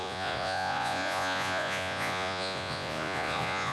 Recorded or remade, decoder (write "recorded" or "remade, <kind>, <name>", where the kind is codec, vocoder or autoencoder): remade, vocoder, Vocos